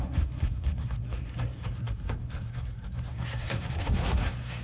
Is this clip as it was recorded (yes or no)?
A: no